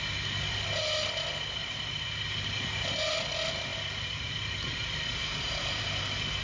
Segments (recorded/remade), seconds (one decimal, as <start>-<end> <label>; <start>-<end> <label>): 0.0-1.6 recorded; 1.6-3.0 remade; 3.0-3.7 recorded; 3.7-5.8 remade; 5.8-6.4 recorded